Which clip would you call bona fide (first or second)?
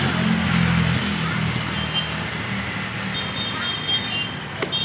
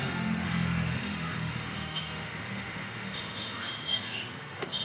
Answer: first